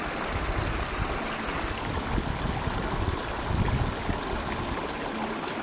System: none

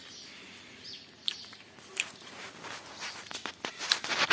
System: vocoder, BigVGAN v2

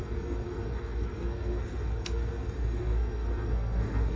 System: codec, SNAC